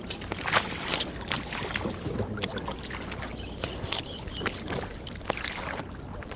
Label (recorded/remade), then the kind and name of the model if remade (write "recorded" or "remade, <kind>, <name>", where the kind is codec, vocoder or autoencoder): recorded